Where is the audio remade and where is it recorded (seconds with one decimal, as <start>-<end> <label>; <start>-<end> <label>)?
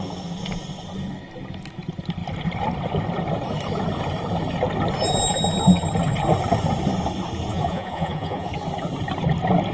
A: 0.0-7.5 recorded; 7.5-8.5 remade; 8.5-9.7 recorded